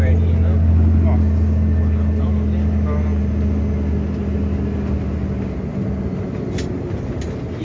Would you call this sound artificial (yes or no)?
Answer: no